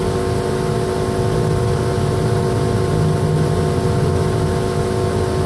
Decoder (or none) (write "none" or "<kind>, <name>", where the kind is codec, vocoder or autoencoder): none